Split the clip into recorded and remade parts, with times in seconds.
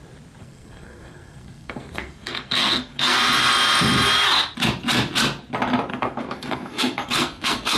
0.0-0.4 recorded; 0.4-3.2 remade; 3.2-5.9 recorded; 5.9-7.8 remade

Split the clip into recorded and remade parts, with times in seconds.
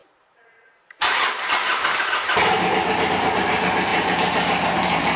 0.0-3.1 remade; 3.1-3.9 recorded; 3.9-5.2 remade